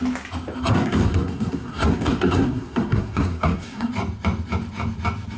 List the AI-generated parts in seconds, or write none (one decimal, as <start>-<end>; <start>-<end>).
0.7-3.9